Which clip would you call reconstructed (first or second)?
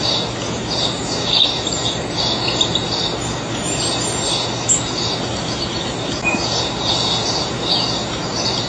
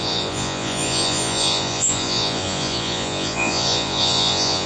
second